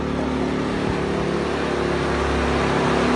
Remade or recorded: recorded